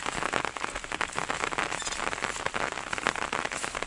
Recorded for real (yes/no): yes